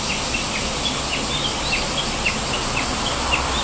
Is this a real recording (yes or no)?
yes